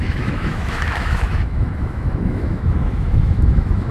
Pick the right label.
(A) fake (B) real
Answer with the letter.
A